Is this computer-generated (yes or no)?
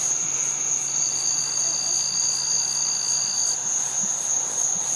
no